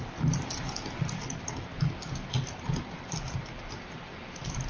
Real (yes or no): yes